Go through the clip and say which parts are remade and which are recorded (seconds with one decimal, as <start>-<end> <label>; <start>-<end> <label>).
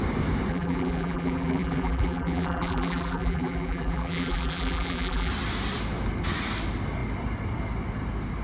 0.0-0.5 recorded; 0.5-5.3 remade; 5.3-8.4 recorded